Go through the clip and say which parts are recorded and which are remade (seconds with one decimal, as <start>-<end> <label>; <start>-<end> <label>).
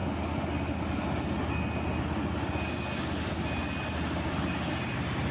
0.0-3.2 recorded; 3.2-5.3 remade